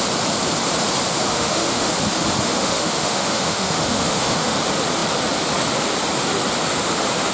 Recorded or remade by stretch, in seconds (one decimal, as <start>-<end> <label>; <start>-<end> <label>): 0.0-1.3 recorded; 1.3-1.9 remade; 1.9-2.5 recorded; 2.5-4.6 remade; 4.6-7.3 recorded